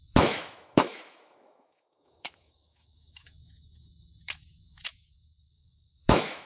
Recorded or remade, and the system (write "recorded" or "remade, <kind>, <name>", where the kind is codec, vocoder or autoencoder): remade, autoencoder, DAC-VAE